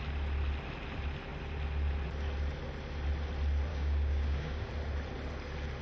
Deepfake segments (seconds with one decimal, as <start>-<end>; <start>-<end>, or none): 3.7-4.7

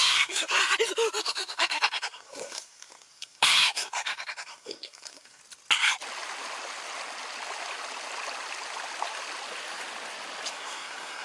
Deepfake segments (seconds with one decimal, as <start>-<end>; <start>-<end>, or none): 0.0-0.6; 1.2-5.4; 10.5-11.2

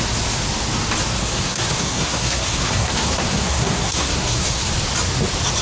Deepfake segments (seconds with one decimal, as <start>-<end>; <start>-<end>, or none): 1.2-4.6